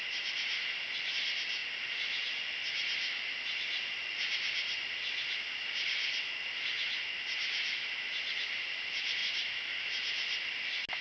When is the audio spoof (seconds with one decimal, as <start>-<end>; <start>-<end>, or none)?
none